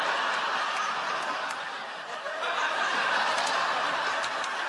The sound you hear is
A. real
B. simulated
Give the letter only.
A